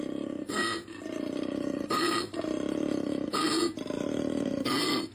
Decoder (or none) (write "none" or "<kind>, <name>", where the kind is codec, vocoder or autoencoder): none